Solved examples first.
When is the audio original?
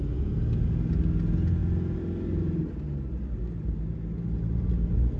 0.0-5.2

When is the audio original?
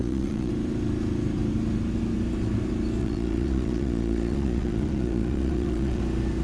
0.5-3.0; 6.0-6.4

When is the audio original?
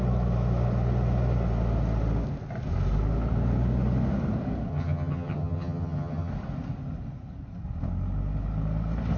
0.0-4.7; 6.3-9.2